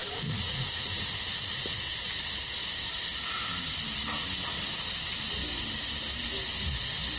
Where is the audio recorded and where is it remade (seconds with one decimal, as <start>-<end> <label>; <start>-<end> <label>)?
0.0-1.0 remade; 1.0-7.2 recorded